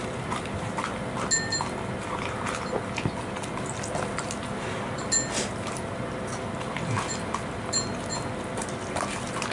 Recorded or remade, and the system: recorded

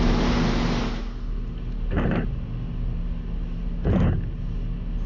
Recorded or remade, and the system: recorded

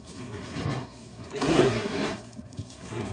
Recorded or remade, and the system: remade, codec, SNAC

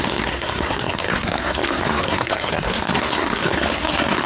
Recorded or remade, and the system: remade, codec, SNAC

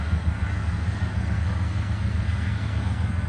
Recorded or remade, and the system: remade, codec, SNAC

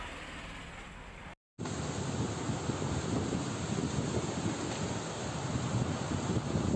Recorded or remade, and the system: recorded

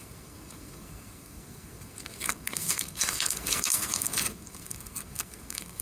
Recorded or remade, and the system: remade, codec, SNAC